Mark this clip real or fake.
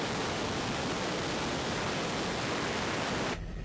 real